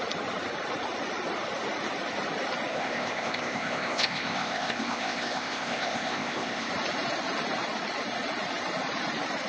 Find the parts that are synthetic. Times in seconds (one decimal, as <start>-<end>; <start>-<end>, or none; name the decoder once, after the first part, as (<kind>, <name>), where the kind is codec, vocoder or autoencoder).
2.7-6.7 (codec, ZipCodec)